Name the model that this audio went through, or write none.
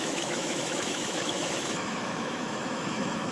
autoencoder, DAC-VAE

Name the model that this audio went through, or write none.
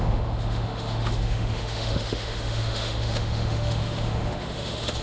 autoencoder, DAC-VAE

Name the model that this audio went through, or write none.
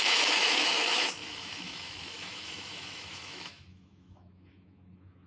autoencoder, DAC-VAE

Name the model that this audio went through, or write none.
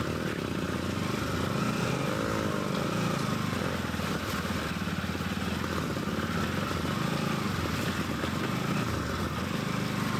none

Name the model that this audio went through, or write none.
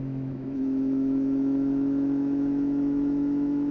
autoencoder, DAC-VAE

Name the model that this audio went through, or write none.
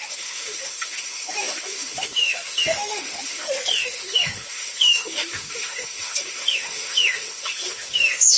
autoencoder, DAC-VAE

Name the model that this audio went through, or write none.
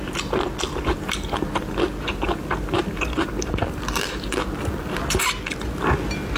none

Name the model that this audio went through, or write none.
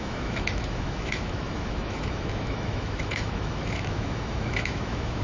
autoencoder, DAC-VAE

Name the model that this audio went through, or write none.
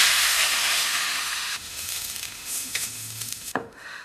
autoencoder, DAC-VAE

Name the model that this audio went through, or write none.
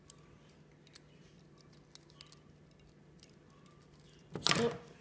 none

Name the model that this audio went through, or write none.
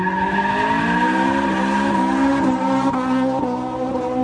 none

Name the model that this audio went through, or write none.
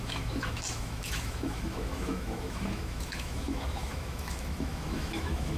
autoencoder, DAC-VAE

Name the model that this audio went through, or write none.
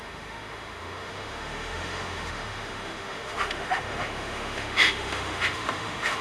autoencoder, DAC-VAE